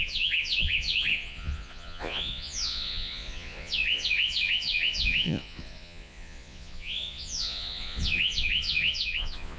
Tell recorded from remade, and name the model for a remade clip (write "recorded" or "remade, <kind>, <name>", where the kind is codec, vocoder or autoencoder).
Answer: remade, vocoder, Vocos